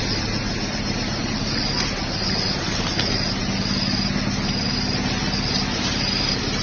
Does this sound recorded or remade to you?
recorded